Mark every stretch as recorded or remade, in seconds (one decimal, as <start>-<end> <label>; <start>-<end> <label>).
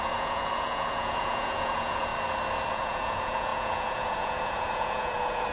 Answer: 0.0-2.1 remade; 2.1-2.7 recorded; 2.7-5.5 remade